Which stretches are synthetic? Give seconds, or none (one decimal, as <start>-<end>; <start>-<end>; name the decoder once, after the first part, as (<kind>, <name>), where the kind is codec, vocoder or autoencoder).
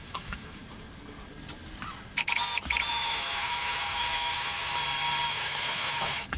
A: 0.0-0.6 (autoencoder, DAC-VAE); 2.9-4.7; 5.3-6.4